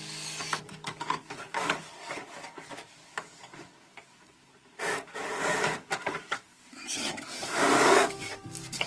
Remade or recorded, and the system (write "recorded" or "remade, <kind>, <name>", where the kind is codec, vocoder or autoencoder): remade, codec, DAC